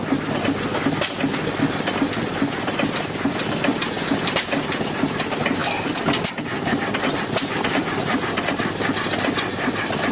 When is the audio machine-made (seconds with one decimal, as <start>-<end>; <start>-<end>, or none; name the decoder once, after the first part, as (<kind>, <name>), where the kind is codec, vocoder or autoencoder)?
0.0-0.7 (vocoder, BigVGAN v2); 3.7-10.1